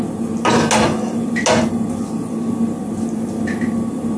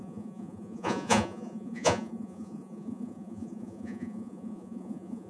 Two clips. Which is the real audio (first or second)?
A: first